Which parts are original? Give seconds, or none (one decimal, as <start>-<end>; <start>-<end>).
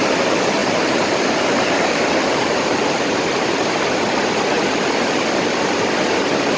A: 0.0-0.6; 3.9-6.6